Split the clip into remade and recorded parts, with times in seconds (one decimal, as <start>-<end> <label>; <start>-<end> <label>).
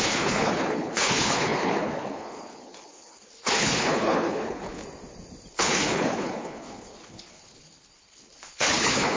0.0-4.8 remade; 4.8-5.5 recorded; 5.5-9.2 remade